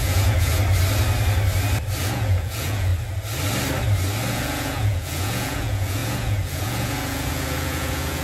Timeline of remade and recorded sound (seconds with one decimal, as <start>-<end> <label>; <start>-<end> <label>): 0.0-0.6 remade; 0.6-2.0 recorded; 2.0-2.9 remade; 2.9-4.3 recorded; 4.3-8.2 remade